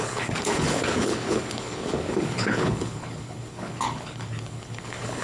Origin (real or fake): fake